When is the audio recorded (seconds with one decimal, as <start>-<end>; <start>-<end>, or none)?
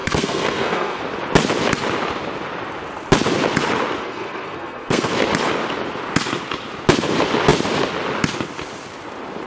1.0-4.0; 5.1-9.5